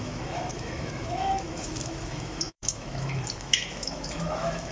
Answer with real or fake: fake